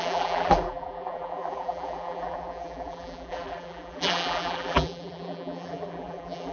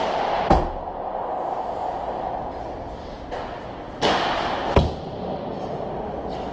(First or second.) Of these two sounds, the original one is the second